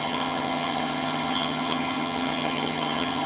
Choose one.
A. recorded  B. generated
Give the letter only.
B